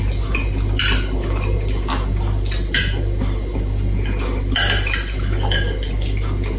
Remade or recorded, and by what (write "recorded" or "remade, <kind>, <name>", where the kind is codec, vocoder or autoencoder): recorded